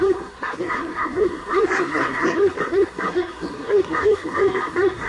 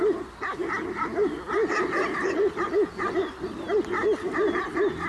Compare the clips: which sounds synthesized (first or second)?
first